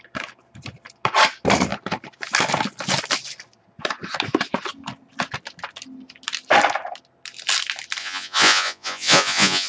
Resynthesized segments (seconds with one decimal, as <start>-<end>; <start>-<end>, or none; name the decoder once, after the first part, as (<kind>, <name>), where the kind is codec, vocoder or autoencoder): 8.0-9.7 (vocoder, Vocos)